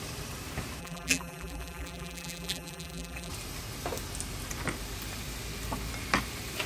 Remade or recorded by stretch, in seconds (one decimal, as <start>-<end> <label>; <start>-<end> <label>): 0.0-0.8 recorded; 0.8-3.3 remade; 3.3-6.7 recorded